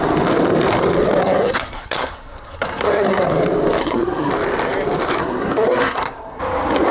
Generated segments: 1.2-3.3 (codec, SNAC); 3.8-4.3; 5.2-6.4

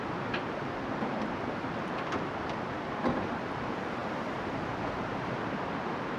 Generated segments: none

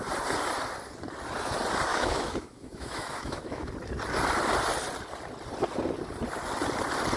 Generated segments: 1.9-3.7 (autoencoder, DAC-VAE)

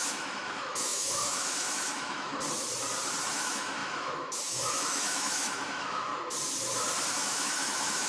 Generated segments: 0.0-2.3 (autoencoder, DAC-VAE); 3.3-6.1; 7.1-8.1

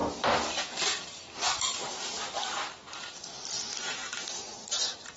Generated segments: 3.7-4.5 (autoencoder, DAC-VAE)

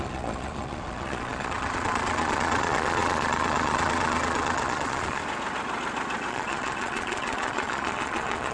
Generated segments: 0.0-5.2 (vocoder, Vocos); 6.3-8.5

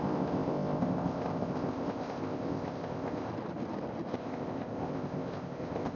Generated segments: 0.0-3.3 (codec, ZipCodec); 4.1-6.0